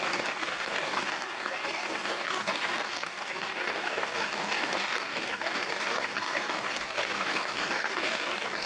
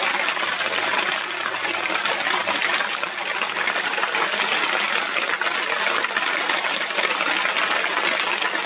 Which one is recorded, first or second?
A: second